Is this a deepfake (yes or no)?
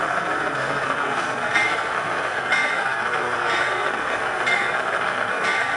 yes